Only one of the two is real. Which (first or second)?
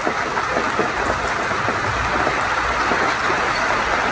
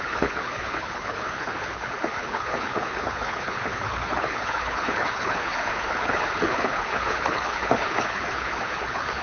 first